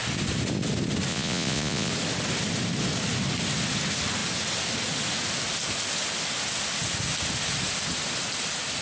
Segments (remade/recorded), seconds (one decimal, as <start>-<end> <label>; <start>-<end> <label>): 0.0-1.1 recorded; 1.1-1.9 remade; 1.9-8.8 recorded